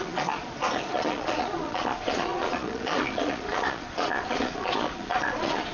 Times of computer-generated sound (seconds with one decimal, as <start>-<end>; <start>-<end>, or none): 0.0-5.7